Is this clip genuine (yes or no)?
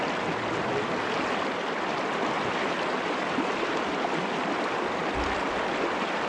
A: no